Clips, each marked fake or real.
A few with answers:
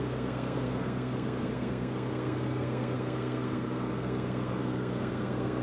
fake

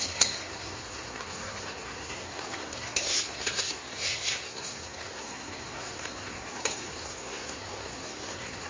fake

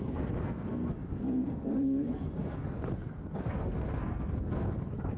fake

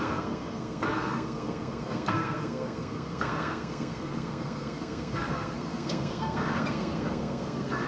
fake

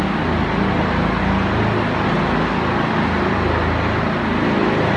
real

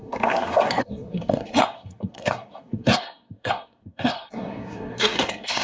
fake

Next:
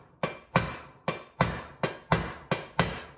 real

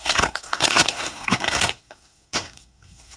fake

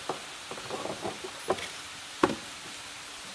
real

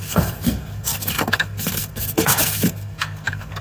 fake